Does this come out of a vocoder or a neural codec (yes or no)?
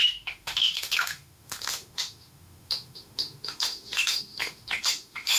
yes